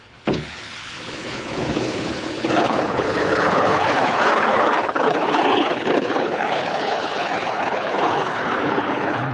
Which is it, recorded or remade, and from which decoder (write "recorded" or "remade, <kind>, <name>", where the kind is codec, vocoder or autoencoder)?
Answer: remade, codec, HILCodec